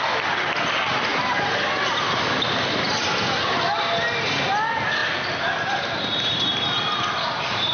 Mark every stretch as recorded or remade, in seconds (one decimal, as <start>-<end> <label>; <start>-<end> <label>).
0.0-7.7 recorded